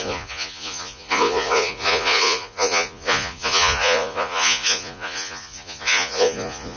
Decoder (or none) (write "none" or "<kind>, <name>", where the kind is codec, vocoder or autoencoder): vocoder, Vocos